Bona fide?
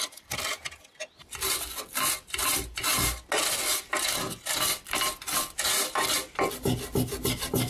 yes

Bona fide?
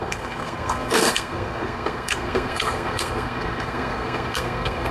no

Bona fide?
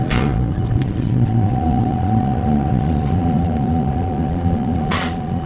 no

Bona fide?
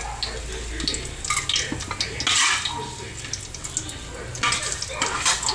yes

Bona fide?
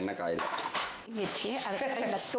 no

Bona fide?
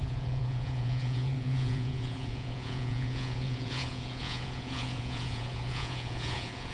no